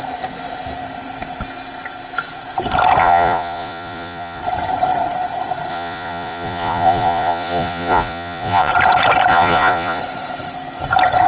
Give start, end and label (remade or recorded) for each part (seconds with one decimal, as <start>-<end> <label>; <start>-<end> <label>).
0.0-3.0 recorded; 3.0-4.4 remade; 4.4-5.7 recorded; 5.7-8.7 remade; 8.7-9.3 recorded; 9.3-10.0 remade; 10.0-11.3 recorded